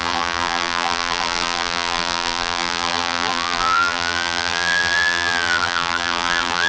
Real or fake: fake